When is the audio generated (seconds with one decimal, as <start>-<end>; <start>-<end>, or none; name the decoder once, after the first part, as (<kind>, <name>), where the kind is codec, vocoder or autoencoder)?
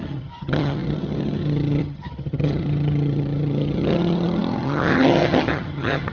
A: 0.0-6.1 (vocoder, HiFi-GAN)